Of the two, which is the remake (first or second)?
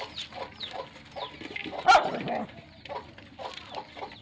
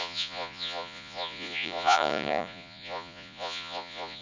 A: second